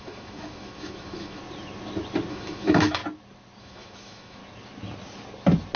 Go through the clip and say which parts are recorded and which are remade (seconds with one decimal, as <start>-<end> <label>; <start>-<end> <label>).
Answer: 0.0-1.4 remade; 1.4-2.3 recorded; 2.3-3.0 remade; 3.0-3.6 recorded; 3.6-4.4 remade; 4.4-5.8 recorded